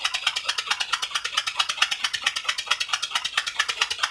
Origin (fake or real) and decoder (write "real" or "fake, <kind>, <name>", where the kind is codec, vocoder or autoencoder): real